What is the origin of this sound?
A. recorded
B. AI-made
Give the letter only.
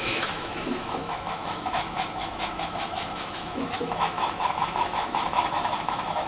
B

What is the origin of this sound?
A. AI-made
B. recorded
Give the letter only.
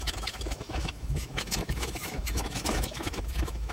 A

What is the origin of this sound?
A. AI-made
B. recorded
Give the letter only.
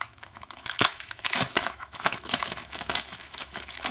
A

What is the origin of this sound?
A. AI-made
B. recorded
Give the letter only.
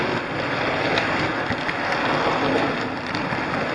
B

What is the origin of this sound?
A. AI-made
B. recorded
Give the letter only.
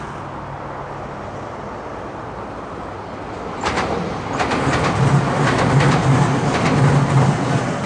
B